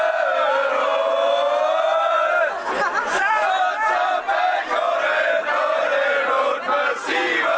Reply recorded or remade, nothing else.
recorded